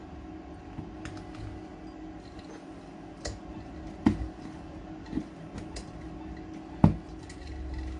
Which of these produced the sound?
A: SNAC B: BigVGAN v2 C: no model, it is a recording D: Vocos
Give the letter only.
C